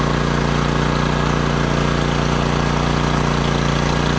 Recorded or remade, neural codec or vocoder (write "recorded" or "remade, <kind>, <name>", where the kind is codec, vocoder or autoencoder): recorded